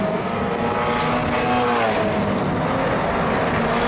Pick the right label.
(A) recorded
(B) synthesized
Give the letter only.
A